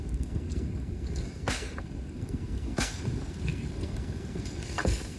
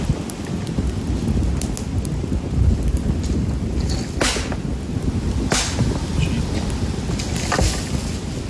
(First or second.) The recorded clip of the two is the second